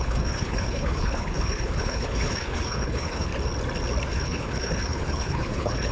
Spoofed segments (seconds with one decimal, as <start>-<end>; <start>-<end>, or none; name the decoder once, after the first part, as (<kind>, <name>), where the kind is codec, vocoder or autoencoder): 0.0-3.3 (codec, HILCodec); 4.1-5.9